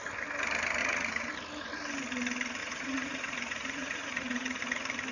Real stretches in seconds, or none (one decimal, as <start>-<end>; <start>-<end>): 0.0-0.8; 1.3-2.6; 4.6-5.1

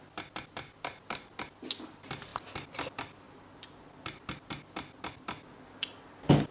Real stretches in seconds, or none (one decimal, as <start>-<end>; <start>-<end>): 0.0-6.5

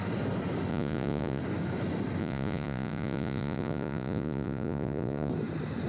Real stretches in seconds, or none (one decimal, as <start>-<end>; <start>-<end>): 0.0-0.7; 1.4-2.2; 5.3-5.9

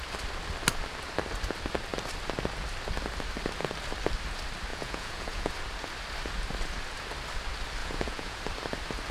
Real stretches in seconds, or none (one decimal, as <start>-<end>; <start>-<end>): 0.0-4.7; 5.5-7.8; 8.4-9.1

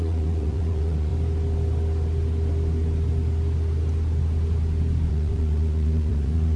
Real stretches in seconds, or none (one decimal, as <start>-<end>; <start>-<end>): 1.1-5.1

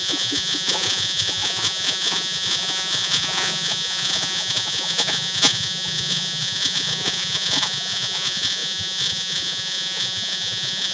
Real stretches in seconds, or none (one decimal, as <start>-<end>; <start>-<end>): none

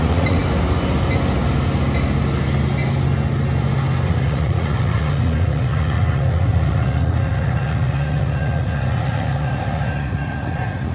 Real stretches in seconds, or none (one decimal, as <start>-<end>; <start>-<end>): 0.4-4.1

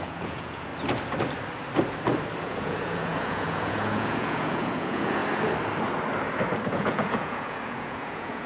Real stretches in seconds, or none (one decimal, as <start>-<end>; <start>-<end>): 0.7-2.4; 5.2-6.7